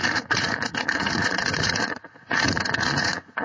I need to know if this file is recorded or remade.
remade